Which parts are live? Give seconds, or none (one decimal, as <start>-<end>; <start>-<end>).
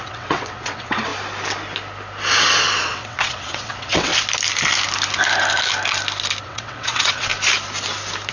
1.1-2.8; 4.1-6.4; 7.3-8.3